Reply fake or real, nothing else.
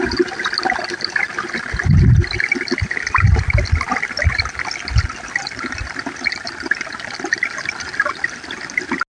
real